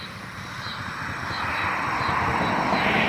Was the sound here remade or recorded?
recorded